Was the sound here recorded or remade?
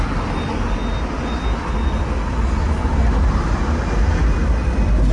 recorded